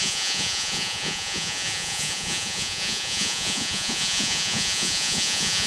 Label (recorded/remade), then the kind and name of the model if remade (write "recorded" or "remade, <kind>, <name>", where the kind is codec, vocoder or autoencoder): remade, vocoder, Vocos